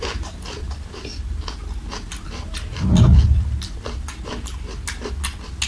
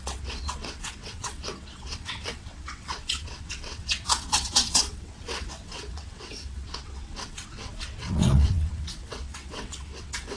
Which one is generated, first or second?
second